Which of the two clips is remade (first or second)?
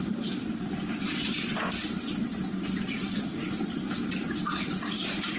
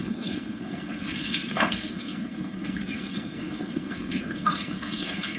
second